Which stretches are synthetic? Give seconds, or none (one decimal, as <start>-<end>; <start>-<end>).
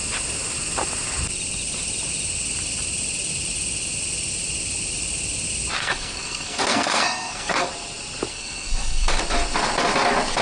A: 5.8-7.7; 8.3-9.2